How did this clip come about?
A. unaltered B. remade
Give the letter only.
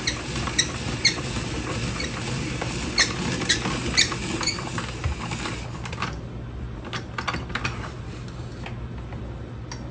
A